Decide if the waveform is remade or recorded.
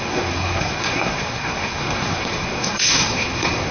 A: remade